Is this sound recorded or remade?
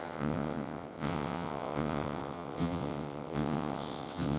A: remade